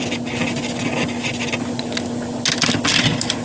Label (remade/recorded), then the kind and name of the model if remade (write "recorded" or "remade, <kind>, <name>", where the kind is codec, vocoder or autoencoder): recorded